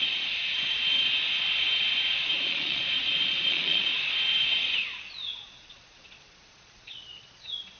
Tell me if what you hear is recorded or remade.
remade